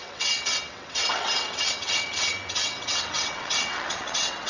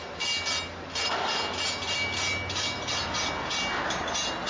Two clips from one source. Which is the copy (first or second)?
first